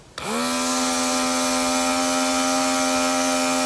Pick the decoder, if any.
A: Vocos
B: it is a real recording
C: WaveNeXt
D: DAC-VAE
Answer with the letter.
B